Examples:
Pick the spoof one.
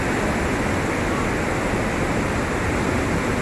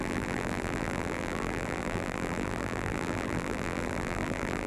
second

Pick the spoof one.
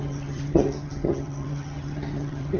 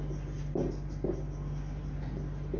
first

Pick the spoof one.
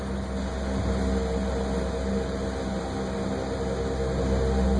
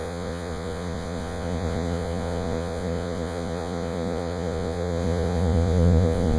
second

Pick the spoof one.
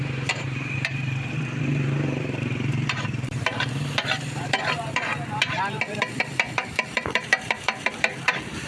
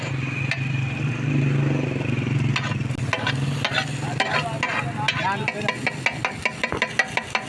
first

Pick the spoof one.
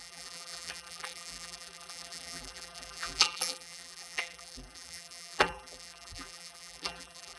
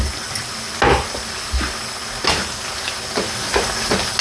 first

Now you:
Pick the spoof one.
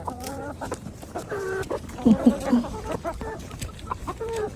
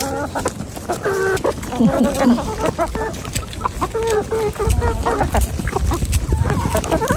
first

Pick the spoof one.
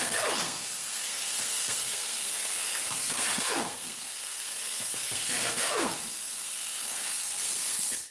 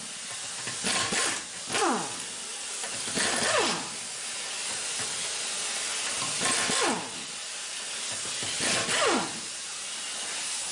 first